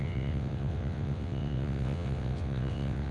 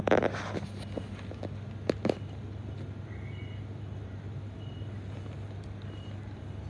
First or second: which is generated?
first